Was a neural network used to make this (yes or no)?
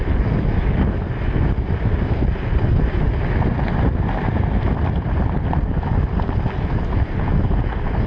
yes